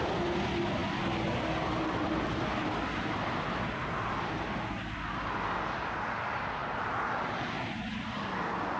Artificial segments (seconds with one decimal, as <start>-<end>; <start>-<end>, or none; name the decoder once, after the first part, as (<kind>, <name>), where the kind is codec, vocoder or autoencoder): none